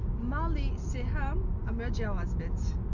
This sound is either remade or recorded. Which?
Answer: recorded